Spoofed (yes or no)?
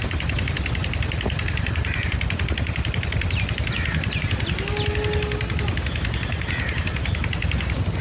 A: no